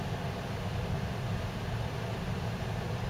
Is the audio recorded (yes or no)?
yes